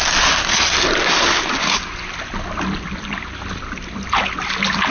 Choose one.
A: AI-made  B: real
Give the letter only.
B